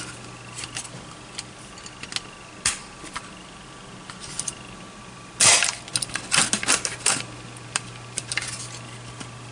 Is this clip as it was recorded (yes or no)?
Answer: yes